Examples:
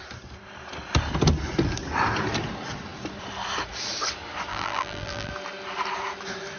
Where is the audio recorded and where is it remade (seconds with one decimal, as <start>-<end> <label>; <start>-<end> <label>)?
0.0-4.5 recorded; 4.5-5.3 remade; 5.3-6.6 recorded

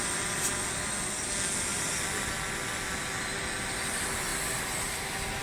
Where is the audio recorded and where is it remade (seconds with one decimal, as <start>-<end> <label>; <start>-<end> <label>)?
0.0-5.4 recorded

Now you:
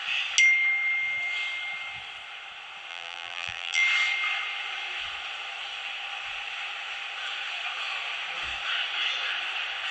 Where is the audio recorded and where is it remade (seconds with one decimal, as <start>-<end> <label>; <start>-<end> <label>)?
0.0-2.9 recorded; 2.9-3.8 remade; 3.8-9.9 recorded